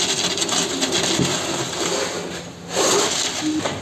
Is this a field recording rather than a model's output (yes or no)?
yes